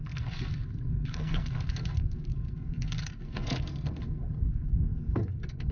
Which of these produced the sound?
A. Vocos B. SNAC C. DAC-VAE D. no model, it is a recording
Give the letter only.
B